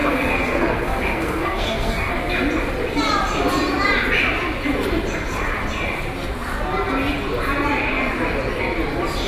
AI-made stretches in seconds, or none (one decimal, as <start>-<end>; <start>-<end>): 0.0-2.1